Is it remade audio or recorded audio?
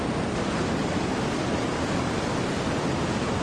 recorded